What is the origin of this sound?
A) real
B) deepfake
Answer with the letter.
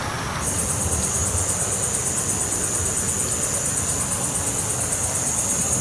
A